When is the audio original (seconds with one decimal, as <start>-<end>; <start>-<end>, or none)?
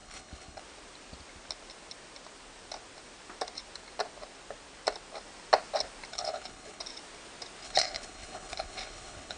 0.6-6.1; 6.8-7.6